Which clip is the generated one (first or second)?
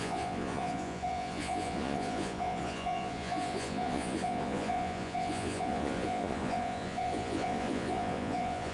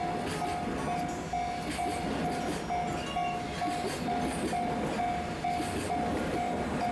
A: first